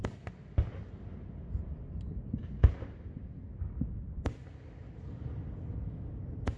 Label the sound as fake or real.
real